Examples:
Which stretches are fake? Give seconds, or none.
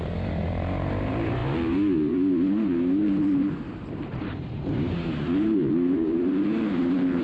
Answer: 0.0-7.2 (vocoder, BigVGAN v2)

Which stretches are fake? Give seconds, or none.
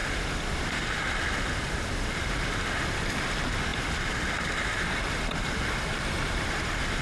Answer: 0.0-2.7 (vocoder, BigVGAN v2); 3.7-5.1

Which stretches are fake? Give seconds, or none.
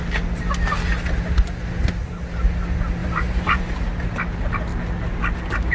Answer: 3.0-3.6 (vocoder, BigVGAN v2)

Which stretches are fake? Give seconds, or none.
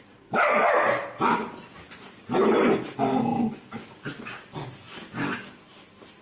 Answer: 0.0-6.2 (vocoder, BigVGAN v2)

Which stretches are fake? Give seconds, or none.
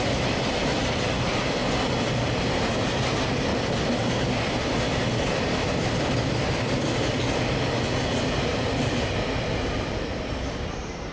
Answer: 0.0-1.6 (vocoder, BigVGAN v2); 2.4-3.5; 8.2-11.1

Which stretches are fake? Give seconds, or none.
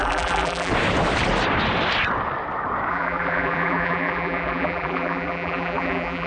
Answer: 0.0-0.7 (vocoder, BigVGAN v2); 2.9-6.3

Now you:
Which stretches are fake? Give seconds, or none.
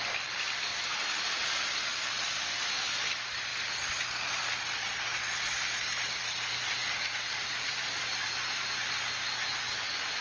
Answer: 6.8-8.3 (vocoder, BigVGAN v2)